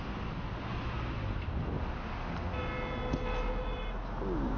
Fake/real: real